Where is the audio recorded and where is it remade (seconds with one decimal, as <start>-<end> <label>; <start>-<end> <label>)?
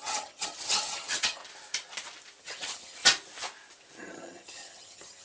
0.0-1.4 remade; 1.4-2.4 recorded; 2.4-3.0 remade; 3.0-4.0 recorded; 4.0-5.2 remade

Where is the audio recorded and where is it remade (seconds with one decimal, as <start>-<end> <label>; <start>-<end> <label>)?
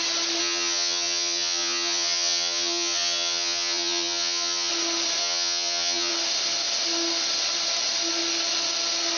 0.0-0.4 recorded; 0.4-4.7 remade; 4.7-5.2 recorded; 5.2-6.1 remade; 6.1-9.2 recorded